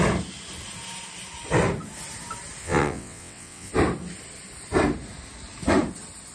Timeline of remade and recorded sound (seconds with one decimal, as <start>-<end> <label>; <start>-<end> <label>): 0.0-2.6 recorded; 2.6-3.7 remade; 3.7-6.3 recorded